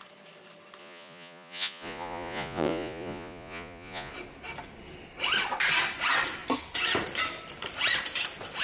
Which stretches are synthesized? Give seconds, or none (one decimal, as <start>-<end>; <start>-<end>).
0.8-4.1